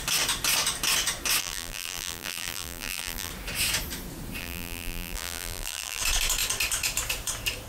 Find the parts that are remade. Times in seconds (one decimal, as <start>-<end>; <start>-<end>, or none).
1.4-3.3; 4.4-6.0